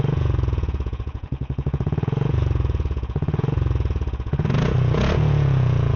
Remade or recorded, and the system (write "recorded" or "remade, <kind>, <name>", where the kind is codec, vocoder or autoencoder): remade, vocoder, Vocos